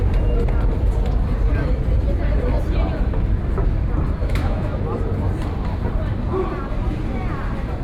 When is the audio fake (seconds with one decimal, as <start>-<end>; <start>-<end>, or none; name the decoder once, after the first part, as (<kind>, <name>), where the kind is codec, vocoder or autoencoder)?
4.2-4.8 (autoencoder, DAC-VAE)